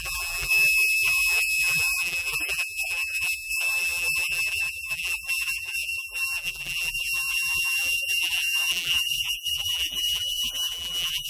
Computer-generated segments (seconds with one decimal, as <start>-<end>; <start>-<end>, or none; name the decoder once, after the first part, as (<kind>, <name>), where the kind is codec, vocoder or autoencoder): 0.0-11.3 (vocoder, BigVGAN v2)